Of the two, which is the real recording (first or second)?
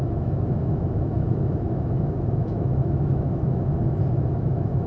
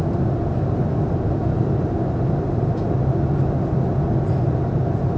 second